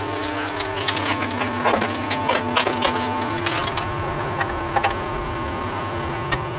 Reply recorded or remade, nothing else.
recorded